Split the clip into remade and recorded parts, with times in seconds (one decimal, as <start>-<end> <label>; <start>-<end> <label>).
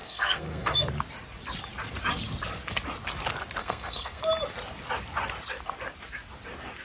0.0-0.9 remade; 0.9-3.6 recorded; 3.6-4.2 remade; 4.2-6.8 recorded